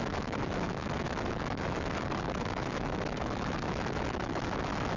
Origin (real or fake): fake